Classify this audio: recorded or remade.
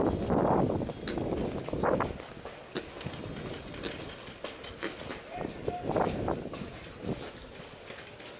recorded